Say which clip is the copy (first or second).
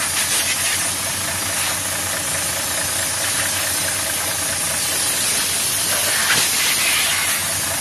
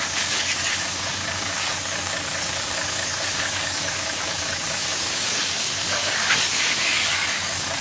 second